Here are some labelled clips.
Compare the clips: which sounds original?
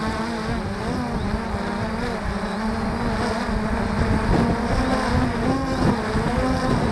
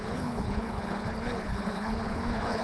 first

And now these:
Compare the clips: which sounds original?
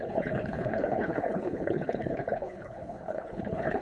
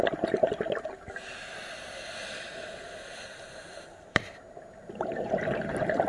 second